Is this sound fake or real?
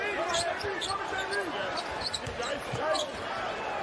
real